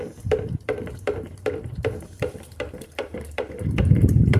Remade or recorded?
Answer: remade